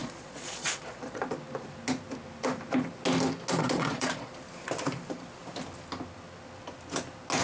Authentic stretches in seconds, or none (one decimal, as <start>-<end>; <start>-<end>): 1.2-3.6; 4.3-7.4